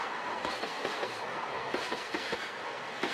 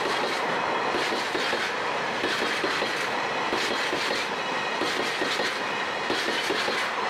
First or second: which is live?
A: second